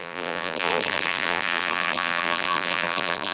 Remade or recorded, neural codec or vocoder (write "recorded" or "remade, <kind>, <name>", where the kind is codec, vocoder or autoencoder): remade, vocoder, BigVGAN v2